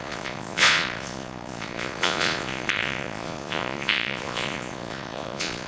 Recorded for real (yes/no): no